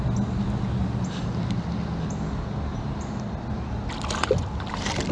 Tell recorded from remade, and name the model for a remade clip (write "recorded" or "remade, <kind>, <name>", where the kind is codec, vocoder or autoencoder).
recorded